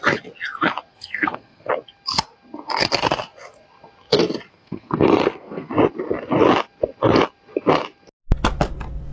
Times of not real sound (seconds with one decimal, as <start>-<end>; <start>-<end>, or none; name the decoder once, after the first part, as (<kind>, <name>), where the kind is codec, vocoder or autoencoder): 0.9-1.7 (codec, SNAC); 4.5-5.7